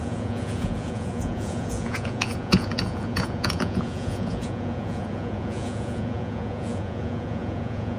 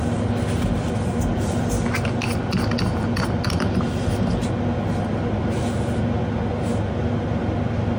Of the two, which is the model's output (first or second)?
first